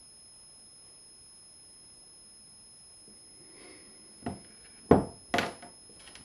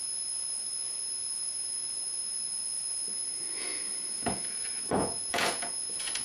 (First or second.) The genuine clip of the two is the first